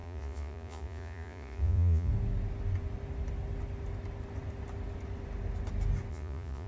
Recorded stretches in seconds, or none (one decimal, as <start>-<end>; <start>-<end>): 2.1-6.1